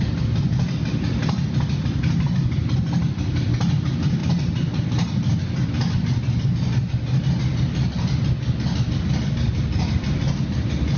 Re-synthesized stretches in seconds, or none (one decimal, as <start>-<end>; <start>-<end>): 0.0-4.2; 9.1-11.0